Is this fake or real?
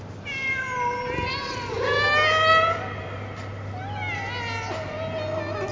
real